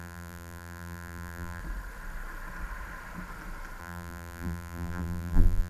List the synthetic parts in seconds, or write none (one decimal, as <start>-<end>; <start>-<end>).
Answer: 0.0-1.6; 3.8-5.7